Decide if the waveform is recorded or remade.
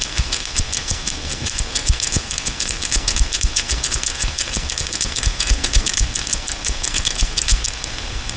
remade